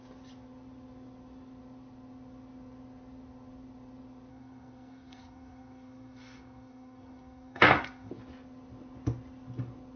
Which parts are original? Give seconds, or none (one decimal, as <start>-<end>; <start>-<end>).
0.0-4.3; 8.1-10.0